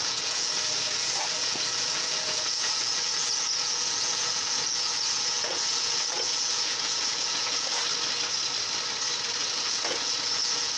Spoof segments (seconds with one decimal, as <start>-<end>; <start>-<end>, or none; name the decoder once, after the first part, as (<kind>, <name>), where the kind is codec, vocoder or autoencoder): 0.0-7.8 (vocoder, Vocos); 9.4-10.8